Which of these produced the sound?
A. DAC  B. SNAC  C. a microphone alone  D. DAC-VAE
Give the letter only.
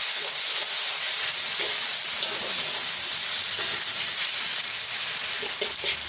C